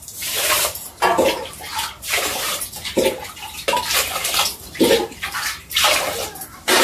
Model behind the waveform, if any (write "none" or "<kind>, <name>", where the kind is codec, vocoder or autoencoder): vocoder, BigVGAN v2